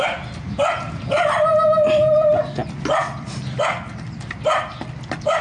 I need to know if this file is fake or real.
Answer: real